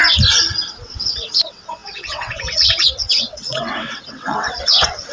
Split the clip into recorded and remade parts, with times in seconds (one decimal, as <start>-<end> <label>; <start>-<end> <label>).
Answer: 0.0-0.7 recorded; 0.7-5.1 remade